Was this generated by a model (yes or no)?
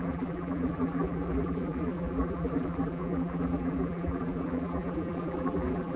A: yes